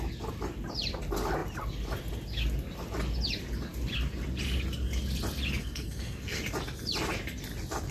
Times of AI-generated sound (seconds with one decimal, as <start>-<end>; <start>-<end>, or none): 5.6-6.4